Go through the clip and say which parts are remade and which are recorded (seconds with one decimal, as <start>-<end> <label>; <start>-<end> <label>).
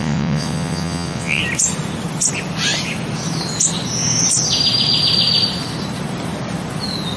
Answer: 0.0-1.4 remade; 1.4-7.2 recorded